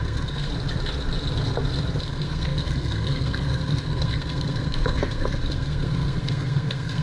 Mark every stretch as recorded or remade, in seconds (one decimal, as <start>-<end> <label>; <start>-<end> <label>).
0.0-0.5 remade; 0.5-2.0 recorded; 2.0-7.0 remade